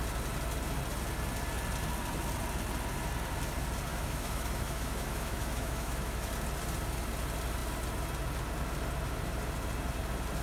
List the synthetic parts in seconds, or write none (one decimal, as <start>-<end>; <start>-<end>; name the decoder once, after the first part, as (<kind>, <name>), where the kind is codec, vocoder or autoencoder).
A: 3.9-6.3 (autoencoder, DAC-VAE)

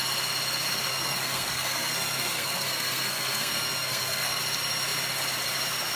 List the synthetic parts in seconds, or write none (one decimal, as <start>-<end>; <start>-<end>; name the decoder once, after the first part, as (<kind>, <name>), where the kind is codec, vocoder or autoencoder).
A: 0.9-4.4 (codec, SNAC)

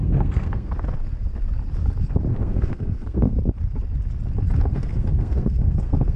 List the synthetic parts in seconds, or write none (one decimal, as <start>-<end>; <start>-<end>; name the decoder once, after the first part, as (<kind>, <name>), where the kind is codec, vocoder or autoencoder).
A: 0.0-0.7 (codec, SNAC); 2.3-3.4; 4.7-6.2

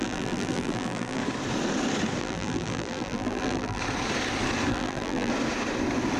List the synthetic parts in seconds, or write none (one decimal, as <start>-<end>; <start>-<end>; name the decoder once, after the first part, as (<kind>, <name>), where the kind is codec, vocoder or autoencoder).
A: 0.0-1.2 (vocoder, BigVGAN v2); 2.2-3.8; 4.7-5.3

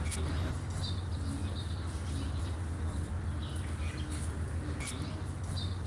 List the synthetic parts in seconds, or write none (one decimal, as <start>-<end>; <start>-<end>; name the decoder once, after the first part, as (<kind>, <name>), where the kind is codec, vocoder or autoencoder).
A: none

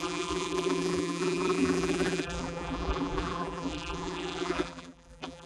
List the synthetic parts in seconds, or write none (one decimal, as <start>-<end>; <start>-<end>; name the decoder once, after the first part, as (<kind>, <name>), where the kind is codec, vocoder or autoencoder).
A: 0.0-5.5 (vocoder, BigVGAN v2)

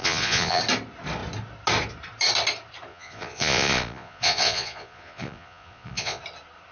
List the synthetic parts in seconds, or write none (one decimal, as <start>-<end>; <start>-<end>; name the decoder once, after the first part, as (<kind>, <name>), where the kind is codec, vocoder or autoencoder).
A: 0.0-0.6 (vocoder, Vocos); 2.9-6.2